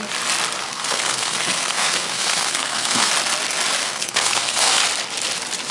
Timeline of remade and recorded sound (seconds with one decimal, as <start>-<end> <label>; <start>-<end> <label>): 0.0-0.6 recorded; 0.6-3.1 remade; 3.1-3.8 recorded; 3.8-4.8 remade; 4.8-5.7 recorded